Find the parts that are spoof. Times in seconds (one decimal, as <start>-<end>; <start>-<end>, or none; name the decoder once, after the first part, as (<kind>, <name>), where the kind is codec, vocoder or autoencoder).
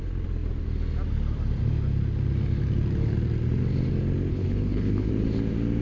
4.3-5.1 (codec, HILCodec)